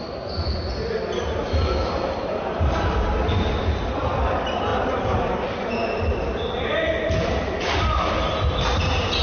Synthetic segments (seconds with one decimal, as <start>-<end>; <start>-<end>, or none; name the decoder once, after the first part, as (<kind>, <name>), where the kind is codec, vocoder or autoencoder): 1.4-1.9 (autoencoder, DAC-VAE)